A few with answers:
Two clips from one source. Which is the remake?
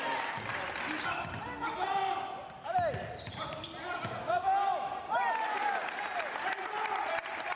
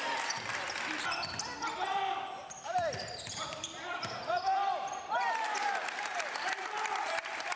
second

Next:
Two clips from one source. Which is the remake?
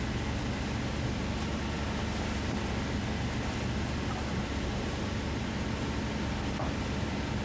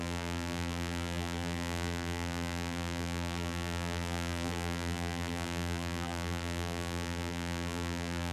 second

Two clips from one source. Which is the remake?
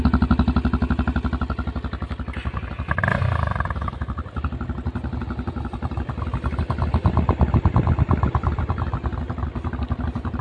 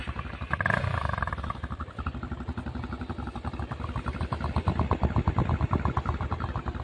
second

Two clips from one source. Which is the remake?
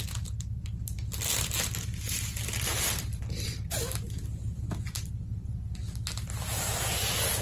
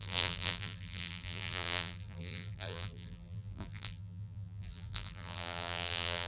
second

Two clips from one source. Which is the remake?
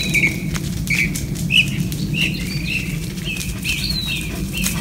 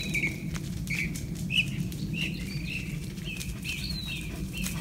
second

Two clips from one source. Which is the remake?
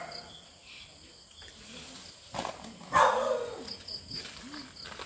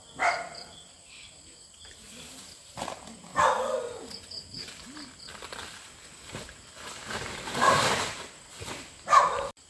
second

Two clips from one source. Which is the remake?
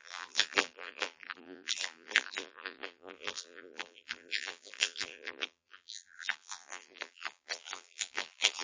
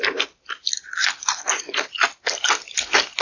first